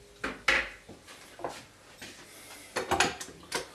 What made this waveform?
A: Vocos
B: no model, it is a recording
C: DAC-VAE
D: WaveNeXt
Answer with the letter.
B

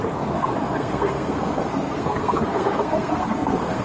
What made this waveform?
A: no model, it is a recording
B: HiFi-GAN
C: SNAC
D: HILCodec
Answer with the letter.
C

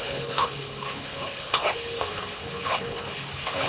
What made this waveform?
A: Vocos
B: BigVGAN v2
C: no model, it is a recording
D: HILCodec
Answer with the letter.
D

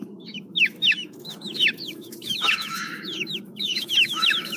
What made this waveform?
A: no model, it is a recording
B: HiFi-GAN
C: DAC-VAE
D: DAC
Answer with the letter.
C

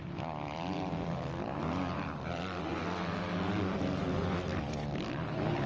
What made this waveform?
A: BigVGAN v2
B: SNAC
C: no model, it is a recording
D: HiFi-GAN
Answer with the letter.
C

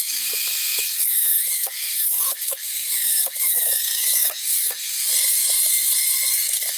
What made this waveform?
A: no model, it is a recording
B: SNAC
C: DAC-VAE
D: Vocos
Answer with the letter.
B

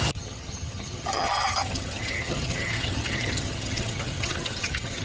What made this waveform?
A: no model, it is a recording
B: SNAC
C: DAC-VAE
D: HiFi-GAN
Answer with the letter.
D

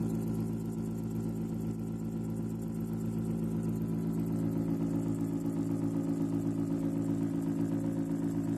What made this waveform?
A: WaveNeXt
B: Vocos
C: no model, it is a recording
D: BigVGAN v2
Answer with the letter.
C